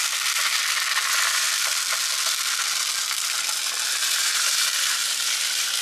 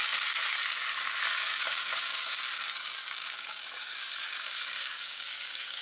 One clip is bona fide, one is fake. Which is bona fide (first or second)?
first